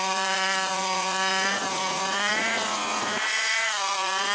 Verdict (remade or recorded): remade